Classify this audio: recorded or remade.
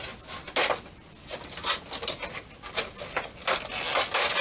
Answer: recorded